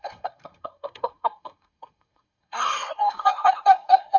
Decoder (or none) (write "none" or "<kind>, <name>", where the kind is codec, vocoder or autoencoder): codec, SNAC